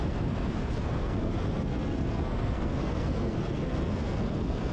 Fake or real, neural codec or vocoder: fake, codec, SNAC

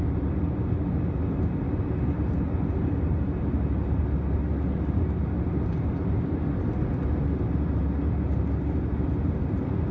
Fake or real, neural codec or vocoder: real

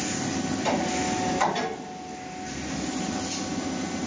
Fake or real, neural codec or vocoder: real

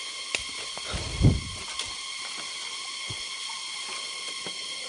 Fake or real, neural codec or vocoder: real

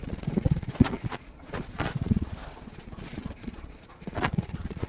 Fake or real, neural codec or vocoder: fake, vocoder, Vocos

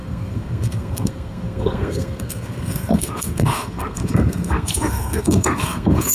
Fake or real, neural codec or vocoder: fake, codec, SNAC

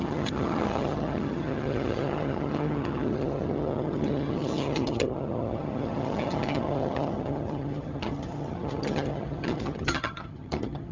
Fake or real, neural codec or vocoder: fake, vocoder, HiFi-GAN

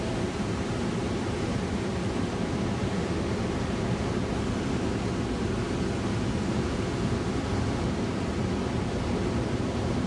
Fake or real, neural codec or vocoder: real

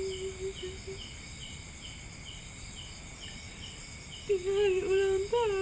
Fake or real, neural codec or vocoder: real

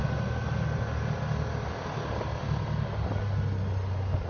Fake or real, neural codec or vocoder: real